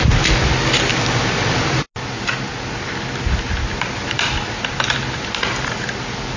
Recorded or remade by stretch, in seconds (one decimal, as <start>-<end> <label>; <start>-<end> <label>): 0.0-6.4 recorded